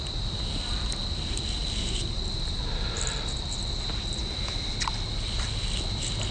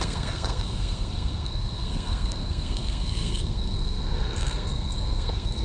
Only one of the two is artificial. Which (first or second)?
second